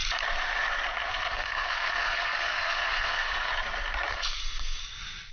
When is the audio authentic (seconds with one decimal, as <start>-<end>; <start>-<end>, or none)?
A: 0.0-1.1; 3.5-4.1; 4.8-5.3